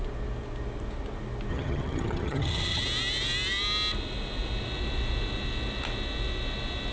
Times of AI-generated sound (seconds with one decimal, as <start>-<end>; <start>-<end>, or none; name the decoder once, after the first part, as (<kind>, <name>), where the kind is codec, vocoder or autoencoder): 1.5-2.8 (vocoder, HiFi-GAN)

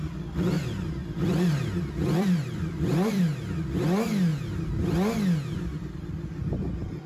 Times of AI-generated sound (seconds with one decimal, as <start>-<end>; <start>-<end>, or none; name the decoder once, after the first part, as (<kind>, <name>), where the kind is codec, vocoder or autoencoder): 1.0-3.2 (vocoder, BigVGAN v2)

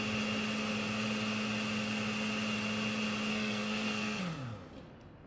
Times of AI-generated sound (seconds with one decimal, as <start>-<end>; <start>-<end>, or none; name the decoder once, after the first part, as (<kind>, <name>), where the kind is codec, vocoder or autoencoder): 3.3-4.2 (codec, SNAC)